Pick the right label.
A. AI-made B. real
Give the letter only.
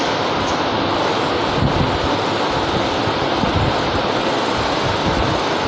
B